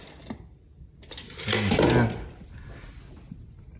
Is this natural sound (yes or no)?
yes